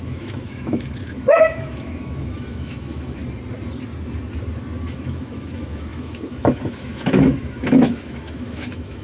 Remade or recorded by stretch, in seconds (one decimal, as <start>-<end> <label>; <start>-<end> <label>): 0.0-3.2 remade; 3.2-4.9 recorded; 4.9-9.0 remade